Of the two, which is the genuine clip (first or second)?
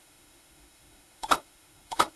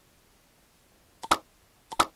second